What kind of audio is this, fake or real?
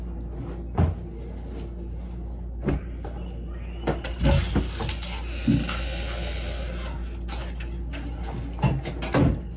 real